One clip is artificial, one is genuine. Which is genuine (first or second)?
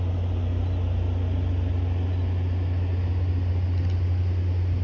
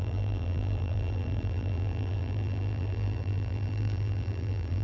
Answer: first